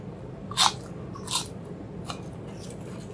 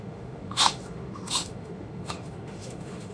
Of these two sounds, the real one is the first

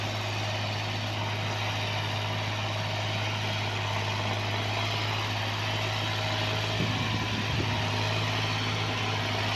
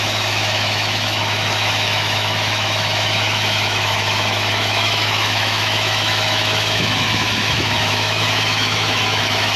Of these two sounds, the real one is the first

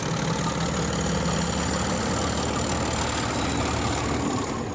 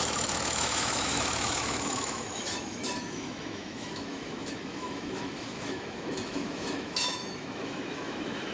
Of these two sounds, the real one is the first